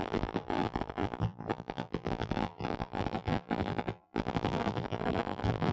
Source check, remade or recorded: remade